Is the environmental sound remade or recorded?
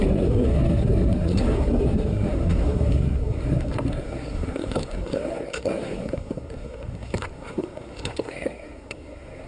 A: remade